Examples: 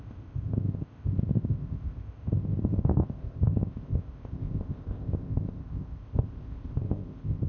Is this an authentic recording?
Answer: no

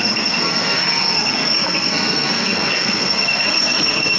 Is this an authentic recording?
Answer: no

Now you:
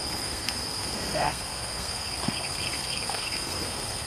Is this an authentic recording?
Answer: no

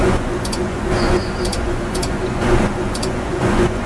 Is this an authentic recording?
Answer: no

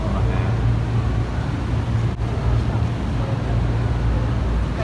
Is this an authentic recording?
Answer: yes